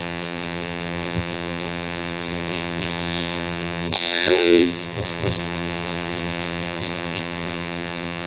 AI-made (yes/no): yes